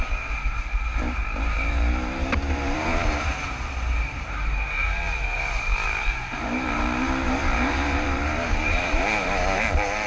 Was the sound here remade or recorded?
remade